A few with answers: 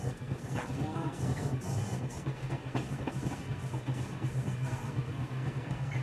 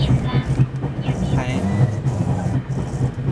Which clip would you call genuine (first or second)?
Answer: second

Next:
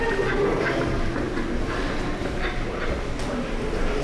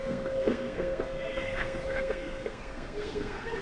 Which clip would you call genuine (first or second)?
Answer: first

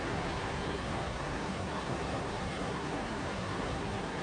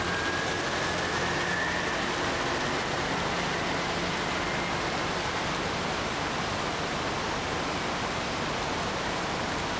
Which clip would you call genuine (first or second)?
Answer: second